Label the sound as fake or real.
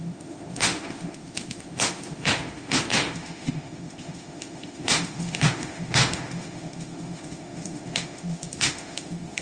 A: fake